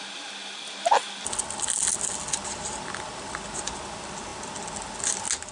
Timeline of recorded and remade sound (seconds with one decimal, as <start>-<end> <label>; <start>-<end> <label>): 0.0-5.5 recorded